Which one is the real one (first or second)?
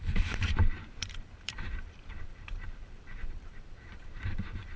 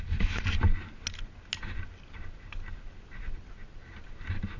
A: second